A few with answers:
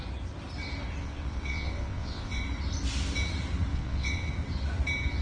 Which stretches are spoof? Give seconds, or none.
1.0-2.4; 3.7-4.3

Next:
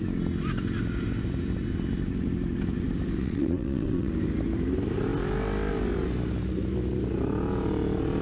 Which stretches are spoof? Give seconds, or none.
3.2-4.1

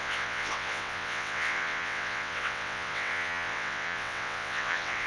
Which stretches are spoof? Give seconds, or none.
0.0-5.1

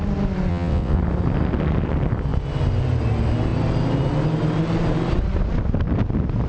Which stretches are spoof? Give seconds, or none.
0.5-1.0